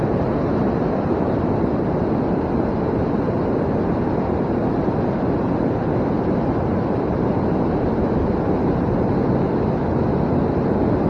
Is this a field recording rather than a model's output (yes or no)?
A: yes